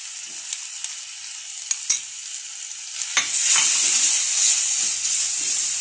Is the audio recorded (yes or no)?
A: yes